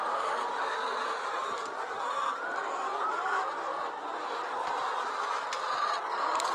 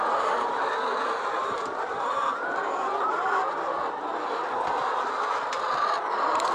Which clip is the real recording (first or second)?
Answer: first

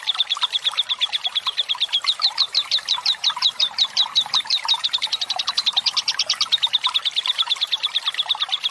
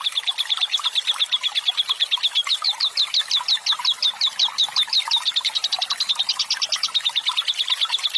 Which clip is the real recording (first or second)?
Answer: second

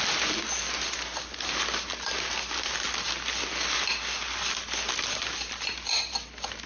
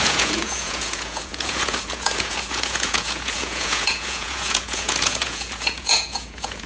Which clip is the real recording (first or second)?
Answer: first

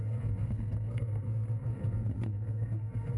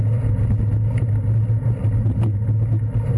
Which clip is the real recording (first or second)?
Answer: second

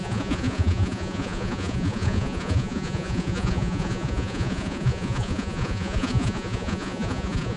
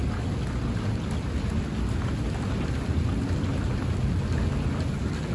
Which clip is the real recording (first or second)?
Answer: second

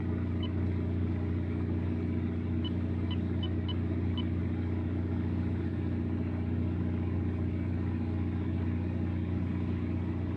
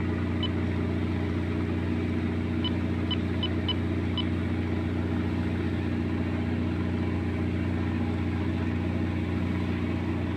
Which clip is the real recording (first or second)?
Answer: second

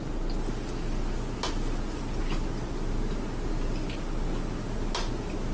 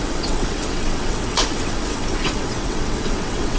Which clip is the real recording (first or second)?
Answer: first